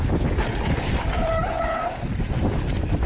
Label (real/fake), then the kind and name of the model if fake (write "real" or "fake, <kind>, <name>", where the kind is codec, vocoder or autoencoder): fake, vocoder, BigVGAN v2